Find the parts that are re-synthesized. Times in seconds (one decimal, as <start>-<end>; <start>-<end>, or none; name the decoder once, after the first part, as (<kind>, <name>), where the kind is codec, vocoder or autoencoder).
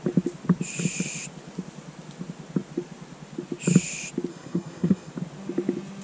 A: 4.3-5.1 (codec, SNAC)